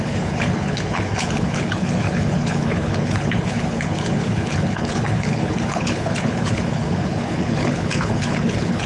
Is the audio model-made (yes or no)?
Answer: yes